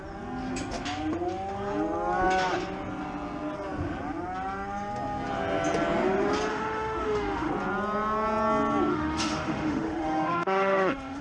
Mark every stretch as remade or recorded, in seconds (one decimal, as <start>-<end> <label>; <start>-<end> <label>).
0.0-6.5 recorded; 6.5-7.5 remade; 7.5-8.9 recorded; 8.9-11.2 remade